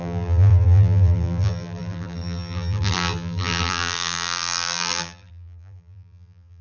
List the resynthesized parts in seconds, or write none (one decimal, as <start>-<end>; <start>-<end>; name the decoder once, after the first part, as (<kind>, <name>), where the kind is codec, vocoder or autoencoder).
0.0-6.6 (vocoder, BigVGAN v2)